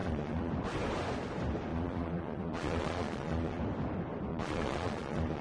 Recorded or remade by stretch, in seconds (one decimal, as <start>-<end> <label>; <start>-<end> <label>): 0.0-0.5 remade; 0.5-1.7 recorded; 1.7-3.6 remade; 3.6-4.3 recorded; 4.3-5.4 remade